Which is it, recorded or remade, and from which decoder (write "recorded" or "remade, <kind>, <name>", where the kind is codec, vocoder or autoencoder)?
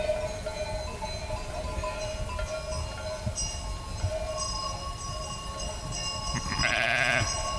recorded